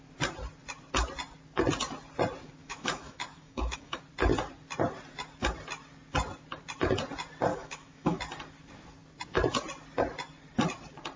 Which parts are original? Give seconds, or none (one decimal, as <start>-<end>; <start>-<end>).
0.0-2.6; 4.0-7.5; 8.2-11.2